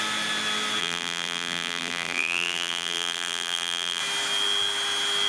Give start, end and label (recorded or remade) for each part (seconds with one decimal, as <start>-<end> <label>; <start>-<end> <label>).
0.0-0.8 recorded; 0.8-4.0 remade; 4.0-5.3 recorded